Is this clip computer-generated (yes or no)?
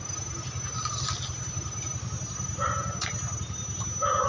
no